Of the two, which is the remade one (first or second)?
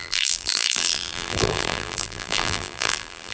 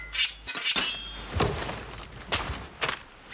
first